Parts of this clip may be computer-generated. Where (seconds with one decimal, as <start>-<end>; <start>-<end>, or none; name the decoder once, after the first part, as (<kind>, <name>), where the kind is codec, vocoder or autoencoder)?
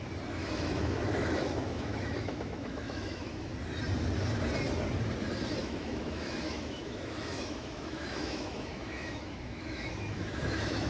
0.4-3.5 (autoencoder, DAC-VAE); 5.6-10.9